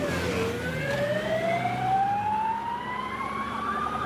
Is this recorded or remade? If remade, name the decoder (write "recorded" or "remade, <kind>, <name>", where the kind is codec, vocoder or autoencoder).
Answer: recorded